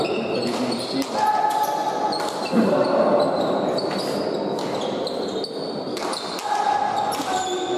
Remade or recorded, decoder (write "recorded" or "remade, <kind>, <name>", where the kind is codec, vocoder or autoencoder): recorded